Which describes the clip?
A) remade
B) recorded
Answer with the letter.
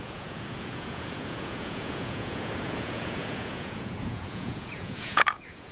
A